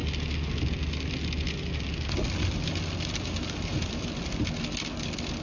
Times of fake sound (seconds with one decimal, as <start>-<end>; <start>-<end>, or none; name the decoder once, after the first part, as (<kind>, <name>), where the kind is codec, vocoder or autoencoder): none